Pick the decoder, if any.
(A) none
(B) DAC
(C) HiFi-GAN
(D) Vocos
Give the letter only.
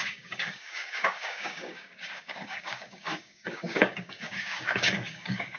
B